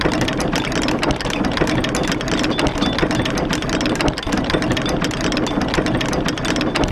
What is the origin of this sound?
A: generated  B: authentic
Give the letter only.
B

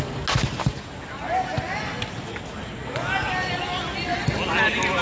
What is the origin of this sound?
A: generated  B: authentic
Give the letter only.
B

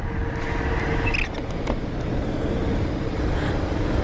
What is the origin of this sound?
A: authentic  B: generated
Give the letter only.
A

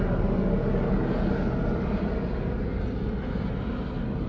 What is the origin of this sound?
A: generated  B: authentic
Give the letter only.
B